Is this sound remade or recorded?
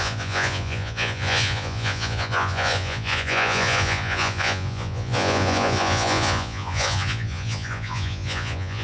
remade